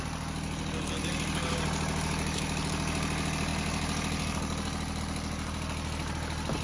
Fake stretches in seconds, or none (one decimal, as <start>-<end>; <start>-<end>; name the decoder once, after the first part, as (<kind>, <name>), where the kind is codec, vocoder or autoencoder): none